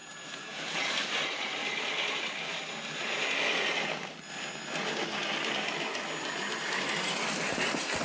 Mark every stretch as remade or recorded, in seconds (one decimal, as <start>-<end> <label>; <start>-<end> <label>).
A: 0.0-0.9 remade; 0.9-8.0 recorded